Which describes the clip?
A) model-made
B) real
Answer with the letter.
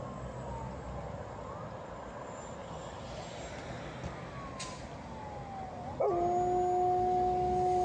B